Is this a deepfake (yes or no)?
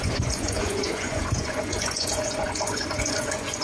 yes